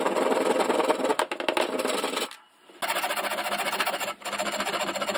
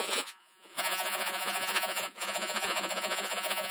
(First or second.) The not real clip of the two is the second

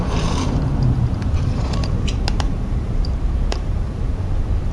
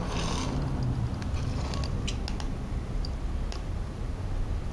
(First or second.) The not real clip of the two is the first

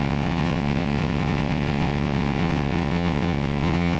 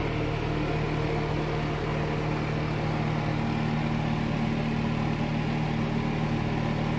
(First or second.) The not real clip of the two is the first